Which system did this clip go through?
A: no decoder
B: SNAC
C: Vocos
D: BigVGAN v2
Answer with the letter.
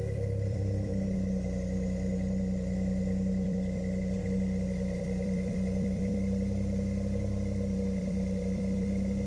D